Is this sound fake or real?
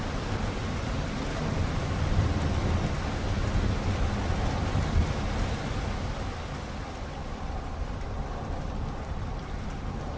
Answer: real